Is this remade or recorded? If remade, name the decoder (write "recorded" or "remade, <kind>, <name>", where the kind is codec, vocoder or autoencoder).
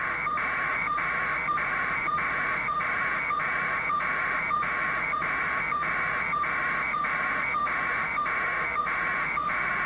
remade, vocoder, Vocos